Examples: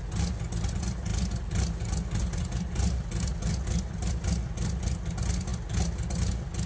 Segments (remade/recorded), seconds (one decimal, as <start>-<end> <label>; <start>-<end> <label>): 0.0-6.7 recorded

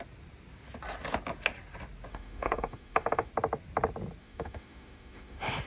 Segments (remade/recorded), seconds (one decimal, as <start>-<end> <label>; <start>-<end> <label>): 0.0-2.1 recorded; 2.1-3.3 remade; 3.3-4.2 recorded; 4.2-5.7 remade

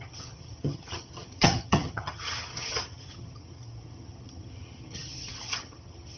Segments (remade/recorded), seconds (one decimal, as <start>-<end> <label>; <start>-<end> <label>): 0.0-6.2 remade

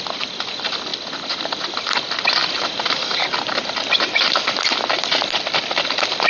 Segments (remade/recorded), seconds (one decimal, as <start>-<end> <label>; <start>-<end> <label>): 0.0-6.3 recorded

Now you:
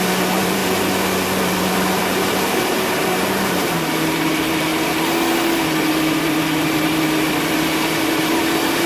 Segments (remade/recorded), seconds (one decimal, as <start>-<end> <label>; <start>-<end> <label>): 0.0-0.6 remade; 0.6-1.4 recorded; 1.4-4.7 remade; 4.7-5.9 recorded; 5.9-8.9 remade

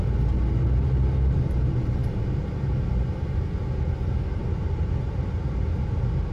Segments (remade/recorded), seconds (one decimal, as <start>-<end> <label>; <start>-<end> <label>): 0.0-6.3 recorded

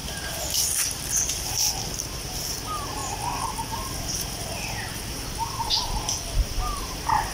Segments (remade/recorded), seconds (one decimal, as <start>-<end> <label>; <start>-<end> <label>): 0.0-7.3 recorded

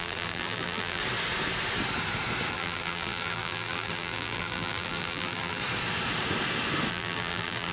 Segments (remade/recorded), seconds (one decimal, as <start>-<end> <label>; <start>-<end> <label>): 0.0-1.0 remade; 1.0-2.5 recorded; 2.5-5.6 remade; 5.6-6.9 recorded; 6.9-7.7 remade